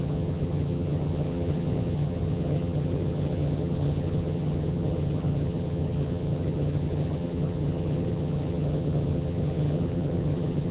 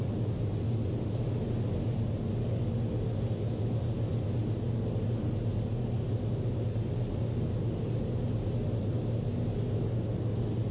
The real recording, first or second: second